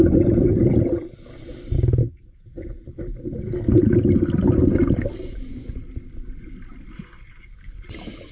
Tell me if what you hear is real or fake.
real